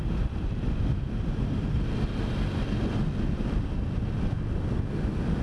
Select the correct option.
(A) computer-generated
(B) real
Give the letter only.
B